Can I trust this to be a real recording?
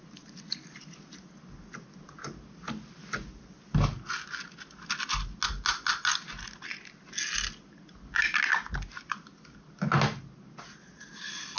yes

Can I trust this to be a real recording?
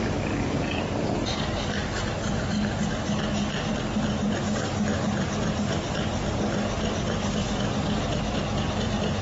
yes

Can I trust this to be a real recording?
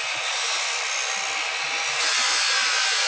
yes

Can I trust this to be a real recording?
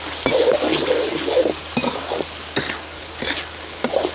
yes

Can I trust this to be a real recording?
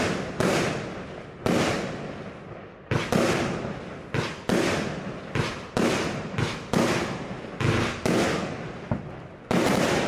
yes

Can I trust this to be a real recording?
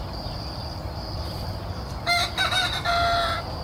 no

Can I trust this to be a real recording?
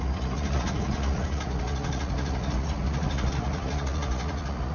no